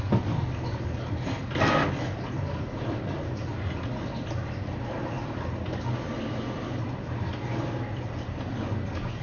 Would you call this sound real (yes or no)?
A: yes